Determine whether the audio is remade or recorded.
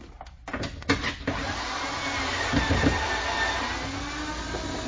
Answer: recorded